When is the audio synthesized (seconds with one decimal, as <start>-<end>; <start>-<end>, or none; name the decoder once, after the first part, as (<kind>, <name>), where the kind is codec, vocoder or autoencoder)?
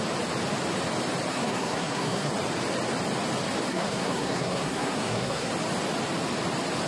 1.3-2.3 (codec, SNAC); 3.7-5.5